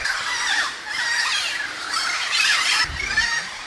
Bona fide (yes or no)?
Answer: no